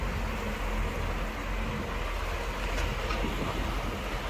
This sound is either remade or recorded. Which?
recorded